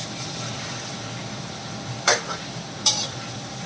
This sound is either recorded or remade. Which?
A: remade